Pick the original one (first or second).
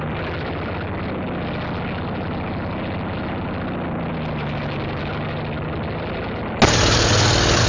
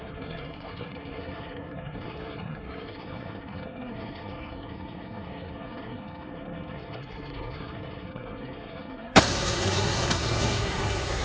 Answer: first